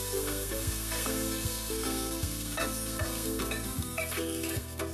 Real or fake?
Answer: fake